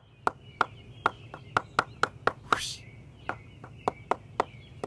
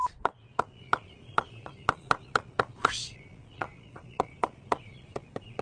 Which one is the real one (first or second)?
first